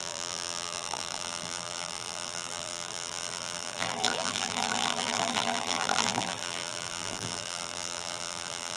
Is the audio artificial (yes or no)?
yes